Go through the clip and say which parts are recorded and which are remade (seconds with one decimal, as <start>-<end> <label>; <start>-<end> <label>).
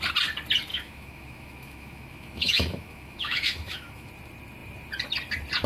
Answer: 0.0-0.7 recorded; 0.7-4.1 remade; 4.1-5.7 recorded